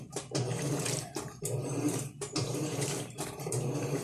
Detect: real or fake fake